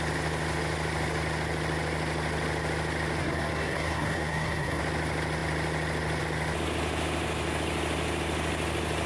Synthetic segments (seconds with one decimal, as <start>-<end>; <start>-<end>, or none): 3.2-4.8